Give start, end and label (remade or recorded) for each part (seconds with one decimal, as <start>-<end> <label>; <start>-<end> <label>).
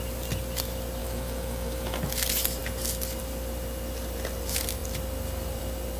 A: 0.0-1.0 recorded; 1.0-2.0 remade; 2.0-6.0 recorded